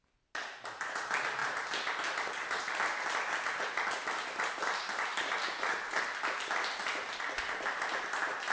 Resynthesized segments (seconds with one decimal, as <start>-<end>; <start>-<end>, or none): none